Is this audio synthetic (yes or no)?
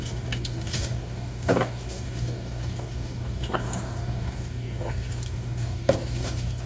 yes